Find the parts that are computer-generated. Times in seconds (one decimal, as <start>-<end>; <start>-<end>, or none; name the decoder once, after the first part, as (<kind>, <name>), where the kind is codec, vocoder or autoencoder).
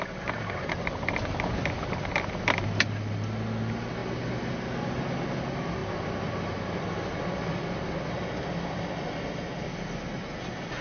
none